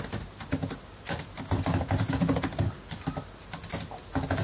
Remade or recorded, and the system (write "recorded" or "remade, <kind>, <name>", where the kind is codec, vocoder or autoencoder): recorded